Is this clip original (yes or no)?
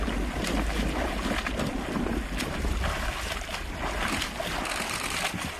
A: yes